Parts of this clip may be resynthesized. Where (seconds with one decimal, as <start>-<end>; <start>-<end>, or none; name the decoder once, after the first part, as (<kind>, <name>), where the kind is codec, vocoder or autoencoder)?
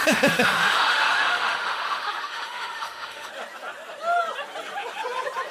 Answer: 0.0-3.3 (autoencoder, DAC-VAE)